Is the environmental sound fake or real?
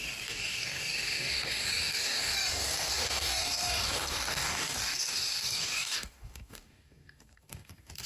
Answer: fake